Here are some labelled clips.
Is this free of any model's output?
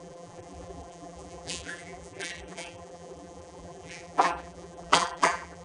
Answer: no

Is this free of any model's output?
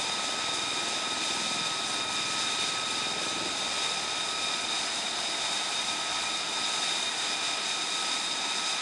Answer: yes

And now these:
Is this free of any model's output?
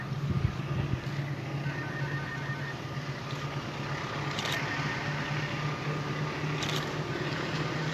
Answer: yes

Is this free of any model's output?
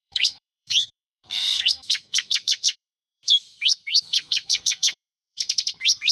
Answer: no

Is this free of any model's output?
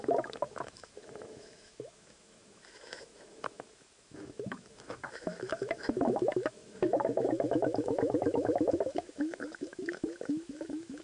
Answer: no